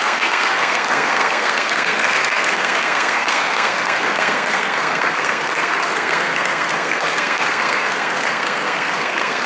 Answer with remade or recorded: remade